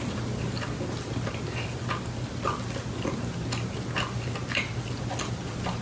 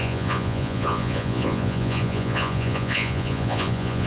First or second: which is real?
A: first